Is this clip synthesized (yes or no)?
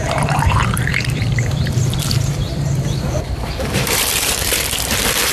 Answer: yes